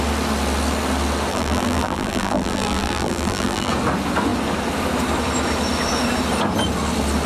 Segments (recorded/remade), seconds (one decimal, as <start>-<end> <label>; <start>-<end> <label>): 0.0-1.3 recorded; 1.3-3.7 remade; 3.7-7.3 recorded